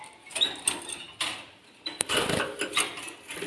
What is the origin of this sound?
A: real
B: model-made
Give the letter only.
A